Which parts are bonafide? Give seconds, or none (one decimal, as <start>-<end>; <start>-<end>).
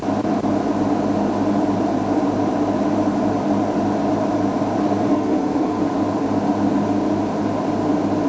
0.0-5.1; 5.8-8.3